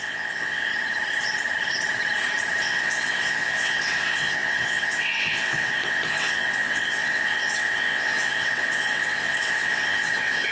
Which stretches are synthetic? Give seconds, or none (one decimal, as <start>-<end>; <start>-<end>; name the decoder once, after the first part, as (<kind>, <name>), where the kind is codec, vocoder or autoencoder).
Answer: 0.0-0.7 (vocoder, WaveNeXt); 2.6-10.5